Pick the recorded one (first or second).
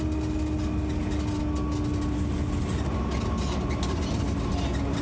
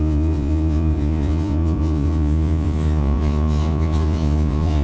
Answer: first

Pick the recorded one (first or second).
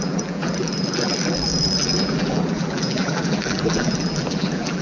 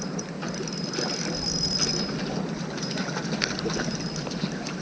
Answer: second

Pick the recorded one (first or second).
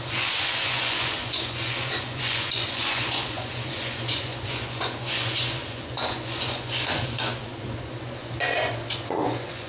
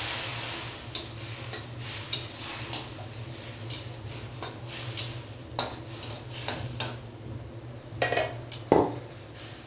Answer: second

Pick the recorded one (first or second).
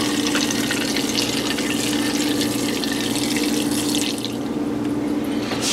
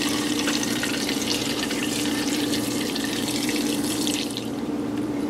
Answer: first